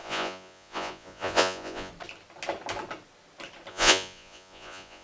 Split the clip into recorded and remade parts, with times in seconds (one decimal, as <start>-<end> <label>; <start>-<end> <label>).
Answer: 0.0-1.9 remade; 1.9-3.7 recorded; 3.7-5.0 remade